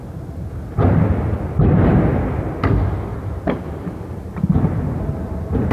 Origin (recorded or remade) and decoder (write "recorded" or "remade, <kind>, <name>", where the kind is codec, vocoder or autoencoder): recorded